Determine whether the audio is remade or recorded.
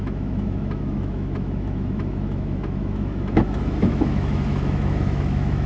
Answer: remade